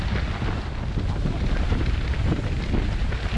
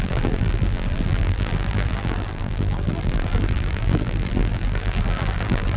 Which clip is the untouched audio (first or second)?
first